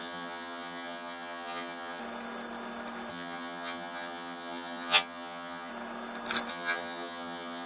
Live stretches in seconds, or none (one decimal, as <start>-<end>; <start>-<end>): 2.0-3.1; 5.7-6.5

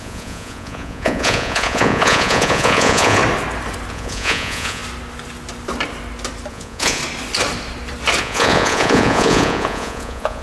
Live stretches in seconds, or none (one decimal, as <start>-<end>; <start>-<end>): 3.2-3.9; 4.8-6.5; 7.0-8.2

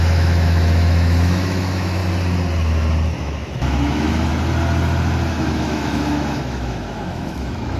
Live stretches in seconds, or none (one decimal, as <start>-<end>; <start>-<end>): 2.0-3.2; 4.3-5.3

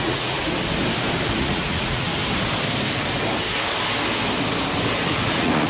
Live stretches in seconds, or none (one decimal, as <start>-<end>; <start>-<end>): 0.4-1.4; 2.1-5.0

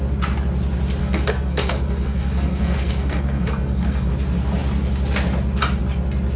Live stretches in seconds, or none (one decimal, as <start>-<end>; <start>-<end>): 0.0-1.0; 4.1-6.4

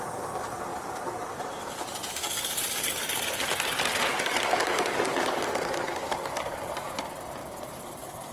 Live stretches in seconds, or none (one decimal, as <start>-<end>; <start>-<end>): 0.0-4.1; 7.0-7.4

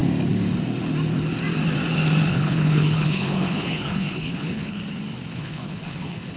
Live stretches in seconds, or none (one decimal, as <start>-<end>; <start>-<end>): 0.0-2.3; 4.8-5.3

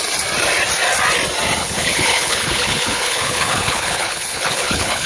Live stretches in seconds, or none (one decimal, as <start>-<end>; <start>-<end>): 0.0-1.6